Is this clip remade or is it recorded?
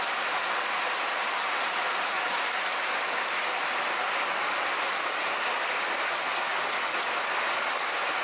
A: recorded